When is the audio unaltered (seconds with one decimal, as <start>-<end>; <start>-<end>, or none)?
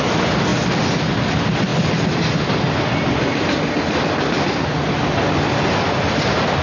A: 0.0-6.6